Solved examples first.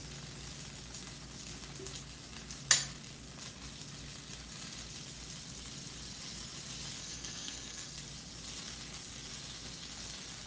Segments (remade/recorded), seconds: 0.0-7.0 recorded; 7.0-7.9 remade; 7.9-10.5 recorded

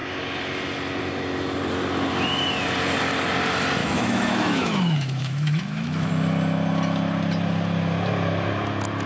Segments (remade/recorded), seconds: 0.0-3.8 recorded; 3.8-6.1 remade; 6.1-9.1 recorded

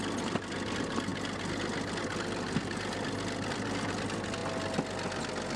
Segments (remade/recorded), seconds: 0.0-4.4 remade; 4.4-5.6 recorded

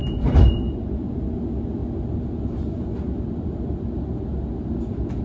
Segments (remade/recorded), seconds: 0.0-5.2 recorded

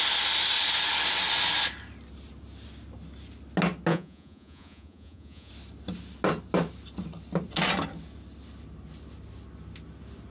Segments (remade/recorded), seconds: 0.0-3.9 recorded; 3.9-5.5 remade; 5.5-10.3 recorded

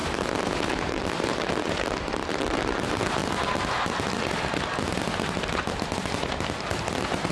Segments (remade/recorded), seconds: 0.0-0.9 recorded; 0.9-3.2 remade; 3.2-7.3 recorded